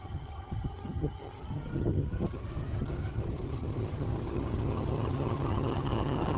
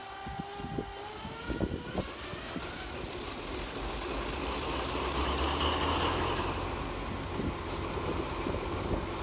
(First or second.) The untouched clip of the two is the second